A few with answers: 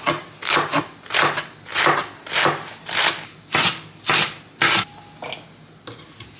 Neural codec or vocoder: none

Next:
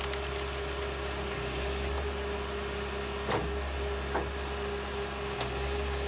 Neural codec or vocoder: none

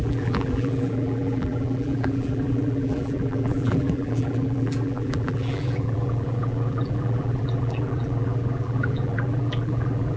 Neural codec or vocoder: vocoder, BigVGAN v2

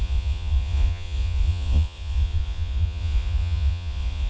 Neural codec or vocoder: vocoder, Vocos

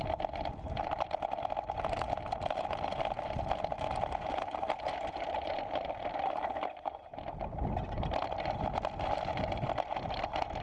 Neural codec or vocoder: none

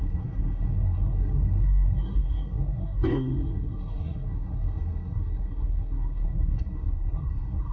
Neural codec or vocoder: codec, SNAC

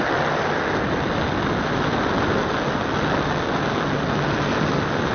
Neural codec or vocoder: none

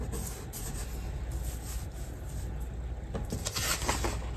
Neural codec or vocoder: none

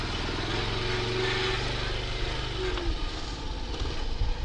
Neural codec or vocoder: none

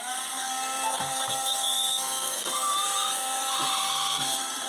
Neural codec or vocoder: codec, SNAC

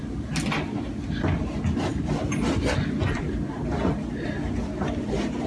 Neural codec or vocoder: none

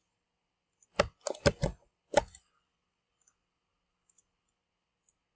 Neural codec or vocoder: none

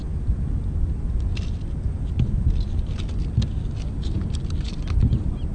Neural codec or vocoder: none